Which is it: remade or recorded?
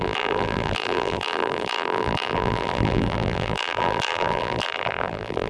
remade